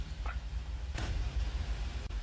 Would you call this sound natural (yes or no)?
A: no